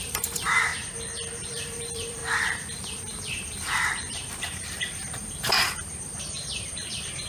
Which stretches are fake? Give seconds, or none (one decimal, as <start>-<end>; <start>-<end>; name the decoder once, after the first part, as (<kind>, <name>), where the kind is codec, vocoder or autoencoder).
0.0-0.7 (vocoder, BigVGAN v2); 1.5-2.2; 3.0-7.3